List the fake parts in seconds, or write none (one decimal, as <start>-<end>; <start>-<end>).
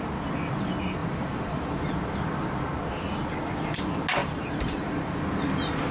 1.0-1.8; 4.2-5.2